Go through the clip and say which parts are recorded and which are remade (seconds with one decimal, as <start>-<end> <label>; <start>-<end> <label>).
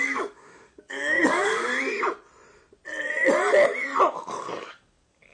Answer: 0.0-1.7 remade; 1.7-4.1 recorded; 4.1-5.3 remade